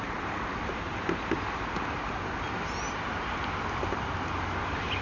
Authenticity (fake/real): real